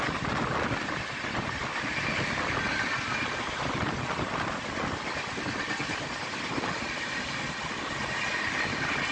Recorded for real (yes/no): yes